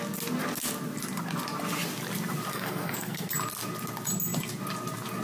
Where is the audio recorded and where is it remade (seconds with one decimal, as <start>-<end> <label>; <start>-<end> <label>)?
0.0-2.5 recorded; 2.5-3.3 remade; 3.3-5.2 recorded